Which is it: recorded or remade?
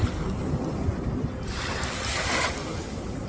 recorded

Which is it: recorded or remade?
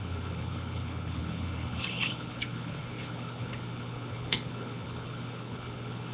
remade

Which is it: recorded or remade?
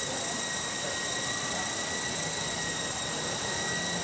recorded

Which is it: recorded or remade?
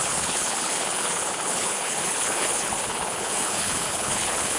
remade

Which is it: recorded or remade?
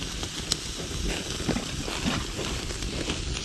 recorded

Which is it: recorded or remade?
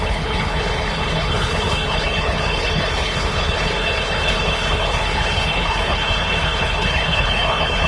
remade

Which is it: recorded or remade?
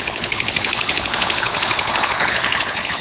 remade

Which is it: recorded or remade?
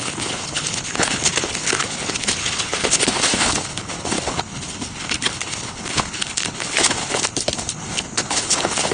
remade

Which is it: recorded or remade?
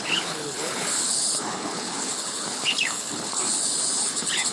remade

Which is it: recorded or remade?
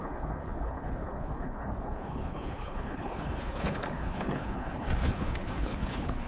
remade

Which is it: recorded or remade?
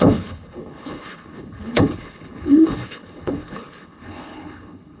remade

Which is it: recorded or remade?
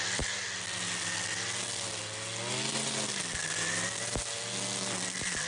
recorded